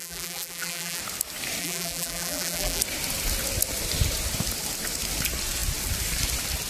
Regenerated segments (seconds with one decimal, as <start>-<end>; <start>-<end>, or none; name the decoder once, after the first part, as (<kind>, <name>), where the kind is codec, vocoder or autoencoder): 0.0-1.0 (vocoder, BigVGAN v2); 1.6-2.8